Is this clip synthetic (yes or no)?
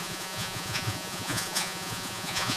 yes